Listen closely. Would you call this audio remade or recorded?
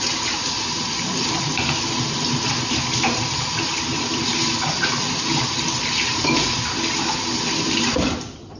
recorded